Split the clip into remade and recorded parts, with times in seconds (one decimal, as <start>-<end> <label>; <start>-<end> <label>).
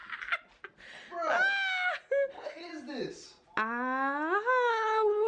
0.0-2.3 recorded; 2.3-2.7 remade; 2.7-4.7 recorded; 4.7-5.3 remade